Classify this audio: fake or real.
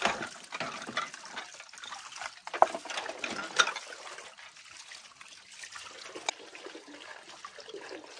real